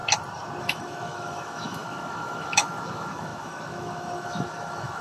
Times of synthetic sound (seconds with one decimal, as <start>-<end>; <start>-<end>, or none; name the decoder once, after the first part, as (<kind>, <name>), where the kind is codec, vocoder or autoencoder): 0.6-5.0 (autoencoder, DAC-VAE)